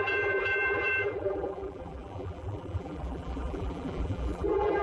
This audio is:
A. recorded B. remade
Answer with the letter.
B